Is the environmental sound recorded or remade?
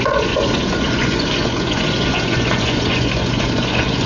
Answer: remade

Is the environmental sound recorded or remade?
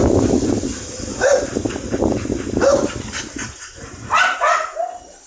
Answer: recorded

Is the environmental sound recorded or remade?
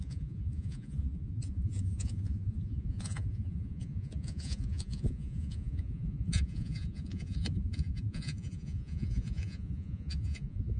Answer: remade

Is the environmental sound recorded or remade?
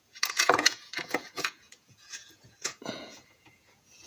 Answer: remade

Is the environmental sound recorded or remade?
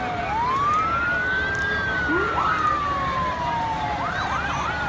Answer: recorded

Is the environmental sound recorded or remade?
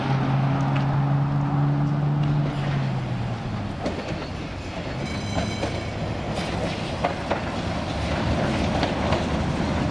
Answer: recorded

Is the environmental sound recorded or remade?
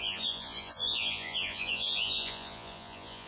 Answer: remade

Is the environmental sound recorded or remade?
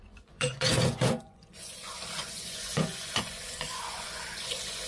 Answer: remade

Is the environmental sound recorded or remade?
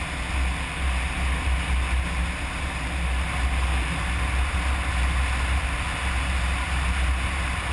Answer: recorded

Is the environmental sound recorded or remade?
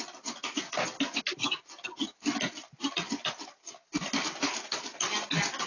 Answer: recorded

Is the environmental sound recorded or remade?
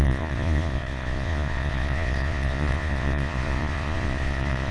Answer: remade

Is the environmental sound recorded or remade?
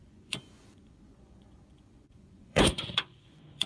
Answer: remade